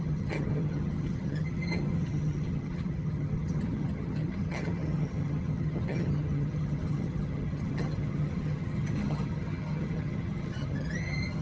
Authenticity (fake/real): fake